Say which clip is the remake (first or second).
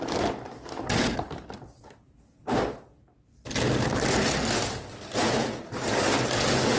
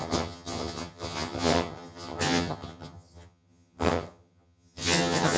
second